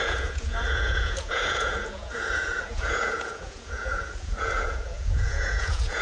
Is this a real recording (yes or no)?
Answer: no